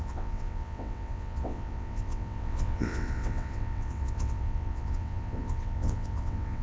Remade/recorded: remade